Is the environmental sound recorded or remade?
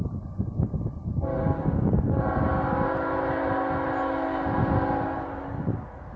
recorded